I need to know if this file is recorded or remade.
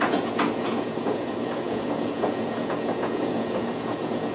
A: remade